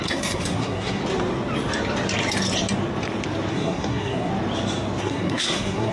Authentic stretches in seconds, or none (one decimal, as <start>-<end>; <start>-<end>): 1.0-3.5; 4.3-5.0